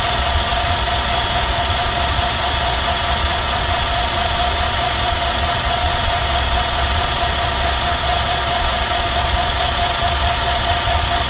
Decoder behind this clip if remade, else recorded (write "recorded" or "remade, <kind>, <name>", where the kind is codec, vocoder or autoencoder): remade, vocoder, Vocos